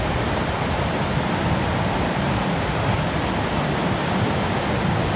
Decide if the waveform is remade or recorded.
recorded